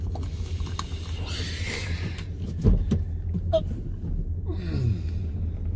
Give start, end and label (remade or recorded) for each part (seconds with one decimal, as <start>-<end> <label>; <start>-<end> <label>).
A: 0.0-5.8 recorded